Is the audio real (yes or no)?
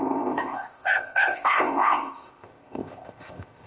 no